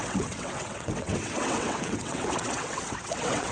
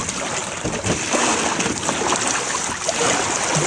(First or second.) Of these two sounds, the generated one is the first